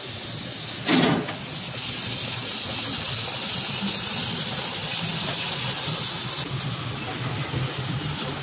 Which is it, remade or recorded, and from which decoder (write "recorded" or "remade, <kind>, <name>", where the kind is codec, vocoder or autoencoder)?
recorded